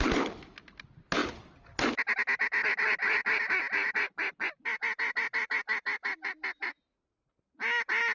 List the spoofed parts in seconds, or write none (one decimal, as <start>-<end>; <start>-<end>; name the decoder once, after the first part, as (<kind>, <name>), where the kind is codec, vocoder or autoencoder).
1.2-2.0 (vocoder, BigVGAN v2)